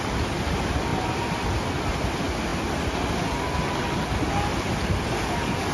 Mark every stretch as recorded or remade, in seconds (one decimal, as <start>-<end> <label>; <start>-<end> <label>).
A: 0.0-5.7 recorded